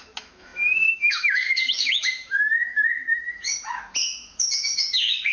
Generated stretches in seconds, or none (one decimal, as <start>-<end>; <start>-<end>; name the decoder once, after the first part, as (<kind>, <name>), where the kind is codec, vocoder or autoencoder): 0.0-5.3 (autoencoder, DAC-VAE)